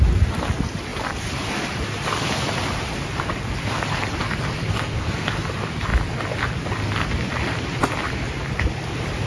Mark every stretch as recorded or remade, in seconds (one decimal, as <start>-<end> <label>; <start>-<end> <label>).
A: 0.0-4.6 recorded; 4.6-5.3 remade; 5.3-9.3 recorded